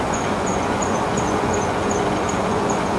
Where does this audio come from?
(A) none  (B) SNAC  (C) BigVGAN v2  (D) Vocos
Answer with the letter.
D